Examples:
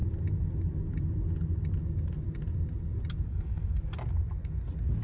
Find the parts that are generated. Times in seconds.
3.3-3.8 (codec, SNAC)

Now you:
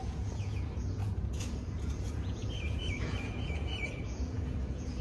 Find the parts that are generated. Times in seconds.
0.0-5.0 (vocoder, Vocos)

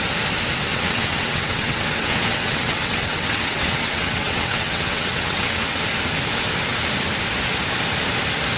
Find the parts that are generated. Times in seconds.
0.7-5.8 (vocoder, WaveNeXt)

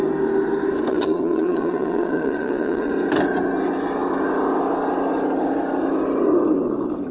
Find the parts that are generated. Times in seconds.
0.9-2.9 (vocoder, Vocos)

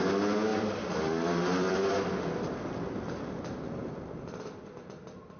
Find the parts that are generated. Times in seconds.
0.5-3.7 (vocoder, BigVGAN v2)

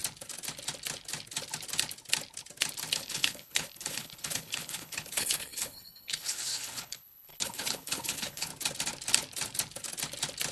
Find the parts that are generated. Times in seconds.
2.9-8.5 (codec, HILCodec)

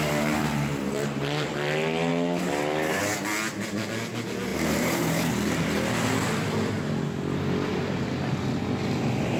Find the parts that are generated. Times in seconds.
0.4-1.5 (vocoder, BigVGAN v2); 4.5-5.3; 7.7-8.3